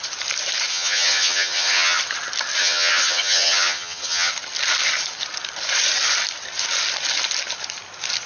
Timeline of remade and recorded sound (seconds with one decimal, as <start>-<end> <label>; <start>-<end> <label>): 0.0-0.7 recorded; 0.7-2.0 remade; 2.0-2.6 recorded; 2.6-4.3 remade; 4.3-8.3 recorded